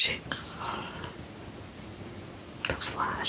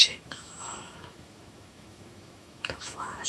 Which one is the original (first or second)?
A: first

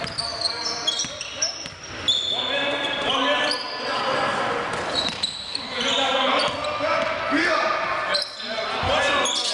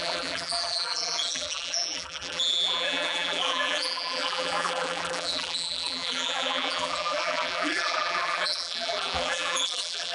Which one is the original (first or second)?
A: first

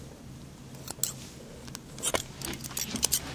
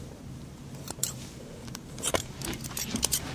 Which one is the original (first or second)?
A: first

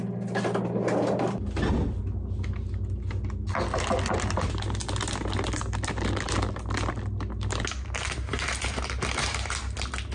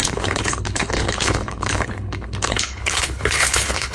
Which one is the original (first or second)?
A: first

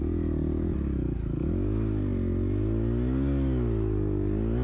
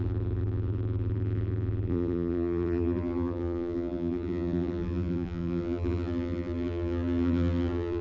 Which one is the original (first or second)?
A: first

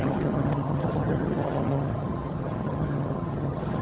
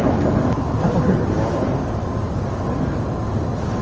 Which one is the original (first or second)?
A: second